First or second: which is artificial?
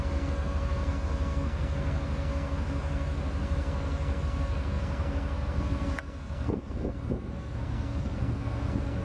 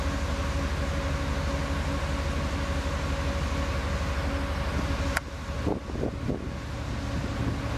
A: first